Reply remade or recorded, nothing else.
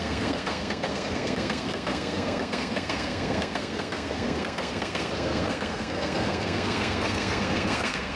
remade